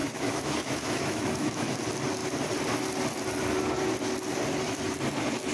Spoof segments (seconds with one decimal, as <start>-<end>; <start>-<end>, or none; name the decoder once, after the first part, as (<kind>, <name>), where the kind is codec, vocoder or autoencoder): 0.0-1.8 (autoencoder, DAC-VAE)